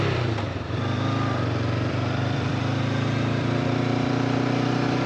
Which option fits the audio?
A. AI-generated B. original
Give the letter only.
A